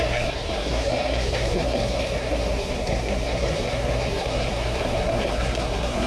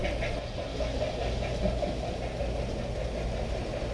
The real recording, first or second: second